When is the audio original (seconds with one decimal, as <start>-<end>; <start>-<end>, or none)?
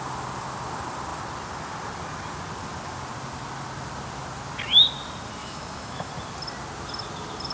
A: 0.0-5.4; 6.1-7.5